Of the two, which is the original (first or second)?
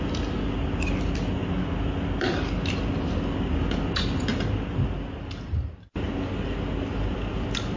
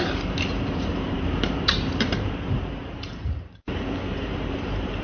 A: first